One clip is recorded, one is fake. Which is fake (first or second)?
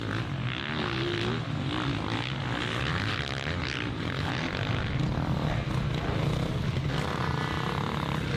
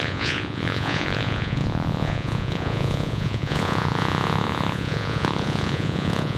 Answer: second